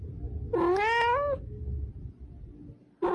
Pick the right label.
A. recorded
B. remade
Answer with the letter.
A